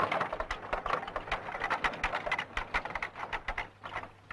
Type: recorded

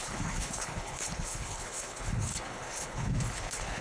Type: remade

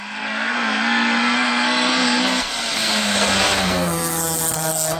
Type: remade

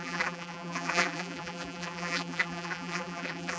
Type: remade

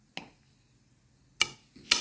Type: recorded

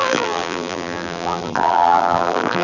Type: remade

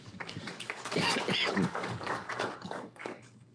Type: remade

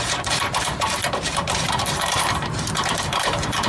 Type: remade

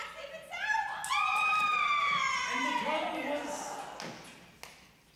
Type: recorded